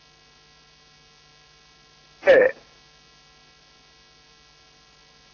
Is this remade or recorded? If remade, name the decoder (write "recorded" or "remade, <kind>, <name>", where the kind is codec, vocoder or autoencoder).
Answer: recorded